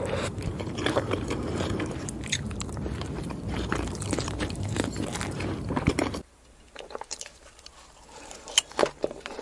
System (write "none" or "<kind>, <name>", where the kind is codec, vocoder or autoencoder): vocoder, BigVGAN v2